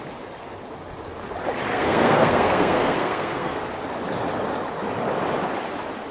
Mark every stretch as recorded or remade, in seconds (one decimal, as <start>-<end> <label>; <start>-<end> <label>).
0.0-1.7 recorded; 1.7-3.6 remade; 3.6-6.1 recorded